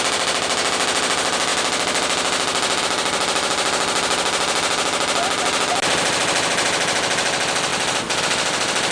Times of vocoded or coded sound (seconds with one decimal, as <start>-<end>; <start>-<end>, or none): none